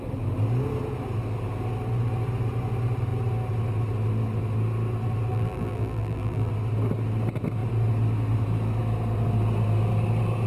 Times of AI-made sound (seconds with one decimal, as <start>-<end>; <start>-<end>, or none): 5.3-6.5